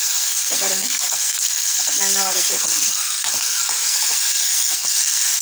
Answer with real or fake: fake